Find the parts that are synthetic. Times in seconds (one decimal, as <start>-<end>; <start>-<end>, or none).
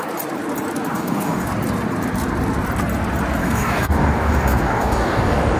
0.9-1.5; 3.4-5.6